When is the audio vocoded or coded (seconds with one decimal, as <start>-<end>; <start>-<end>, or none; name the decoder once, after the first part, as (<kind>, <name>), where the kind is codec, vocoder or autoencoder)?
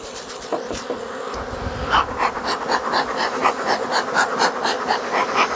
none